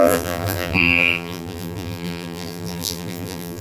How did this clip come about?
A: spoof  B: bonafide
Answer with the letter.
A